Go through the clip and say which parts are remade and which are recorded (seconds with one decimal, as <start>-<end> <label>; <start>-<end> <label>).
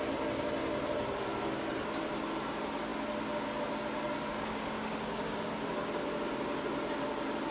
0.0-4.3 recorded; 4.3-5.5 remade; 5.5-7.5 recorded